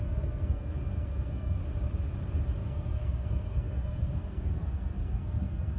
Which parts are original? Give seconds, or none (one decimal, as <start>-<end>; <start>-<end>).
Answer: 1.6-2.6